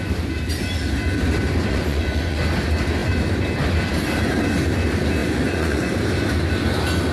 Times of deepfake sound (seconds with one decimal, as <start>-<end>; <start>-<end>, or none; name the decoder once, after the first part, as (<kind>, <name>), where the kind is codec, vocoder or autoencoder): 1.7-2.4 (vocoder, Vocos); 5.2-5.9